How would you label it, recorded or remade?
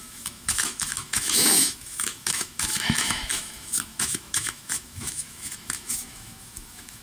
remade